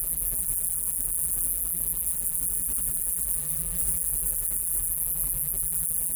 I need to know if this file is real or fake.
fake